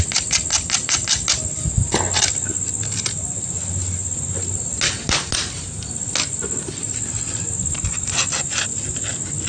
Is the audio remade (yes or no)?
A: no